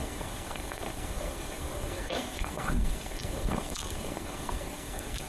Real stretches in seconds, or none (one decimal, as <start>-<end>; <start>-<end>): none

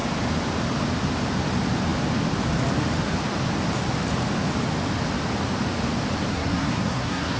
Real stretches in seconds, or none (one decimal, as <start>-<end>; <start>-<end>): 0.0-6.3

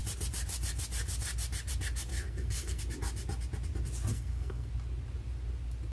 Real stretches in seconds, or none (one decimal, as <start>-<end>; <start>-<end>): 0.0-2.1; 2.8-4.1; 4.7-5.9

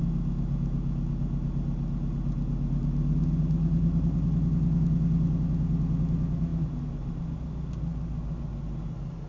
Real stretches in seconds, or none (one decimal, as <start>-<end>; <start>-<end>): 0.0-9.3

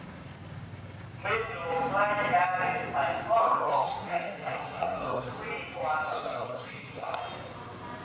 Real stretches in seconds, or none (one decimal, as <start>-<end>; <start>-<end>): 0.0-3.4; 5.4-6.1; 7.2-8.0

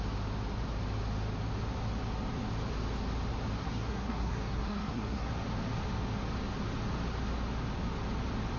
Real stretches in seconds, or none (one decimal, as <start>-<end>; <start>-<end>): 0.0-3.6; 5.3-8.6

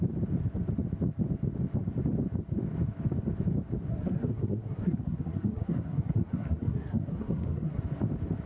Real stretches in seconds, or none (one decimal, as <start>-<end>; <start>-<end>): 0.0-3.9; 7.8-8.5

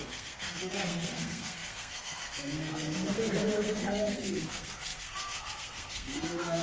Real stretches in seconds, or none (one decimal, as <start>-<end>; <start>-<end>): none